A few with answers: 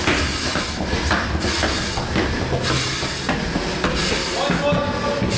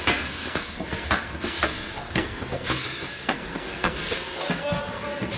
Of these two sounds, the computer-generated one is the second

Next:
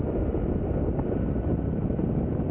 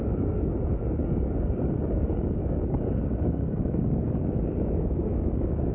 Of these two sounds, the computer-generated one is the second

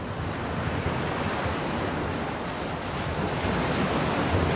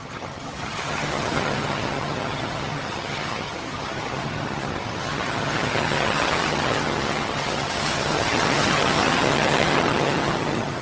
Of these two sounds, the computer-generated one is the second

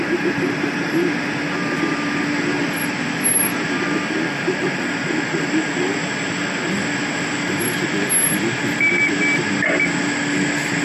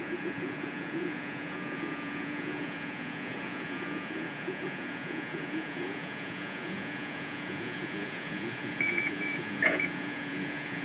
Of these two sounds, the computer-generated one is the second